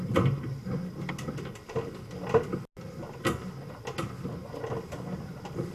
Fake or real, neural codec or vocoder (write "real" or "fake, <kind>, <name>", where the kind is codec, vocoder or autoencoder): real